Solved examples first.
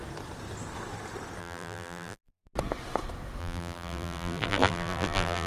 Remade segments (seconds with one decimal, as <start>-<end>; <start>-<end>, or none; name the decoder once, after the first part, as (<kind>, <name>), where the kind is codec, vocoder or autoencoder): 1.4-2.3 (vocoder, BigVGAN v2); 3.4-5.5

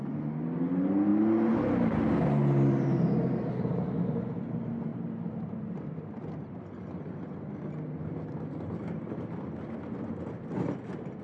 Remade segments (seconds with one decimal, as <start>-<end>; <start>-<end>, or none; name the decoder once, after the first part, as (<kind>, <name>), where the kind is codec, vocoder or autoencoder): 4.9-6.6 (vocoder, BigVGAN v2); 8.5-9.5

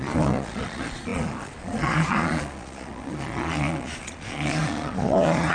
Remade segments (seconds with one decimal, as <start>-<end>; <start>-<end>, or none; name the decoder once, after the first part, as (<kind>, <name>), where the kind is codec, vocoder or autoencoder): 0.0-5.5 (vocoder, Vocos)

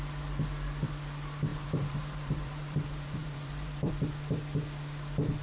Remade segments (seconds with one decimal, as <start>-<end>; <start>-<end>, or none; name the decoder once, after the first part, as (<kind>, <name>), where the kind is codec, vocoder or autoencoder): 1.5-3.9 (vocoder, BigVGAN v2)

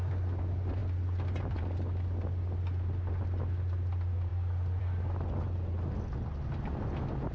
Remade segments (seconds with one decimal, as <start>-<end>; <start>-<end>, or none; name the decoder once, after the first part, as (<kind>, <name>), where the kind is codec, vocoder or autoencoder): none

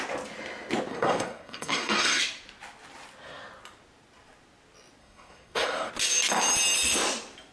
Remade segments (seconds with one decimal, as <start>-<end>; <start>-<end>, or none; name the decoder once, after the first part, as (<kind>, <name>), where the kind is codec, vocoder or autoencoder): 0.9-2.2 (codec, SNAC); 5.0-5.9